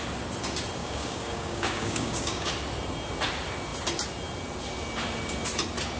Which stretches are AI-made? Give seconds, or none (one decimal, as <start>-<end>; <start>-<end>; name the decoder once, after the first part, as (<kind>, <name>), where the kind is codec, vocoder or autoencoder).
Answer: 0.8-2.5 (codec, DAC)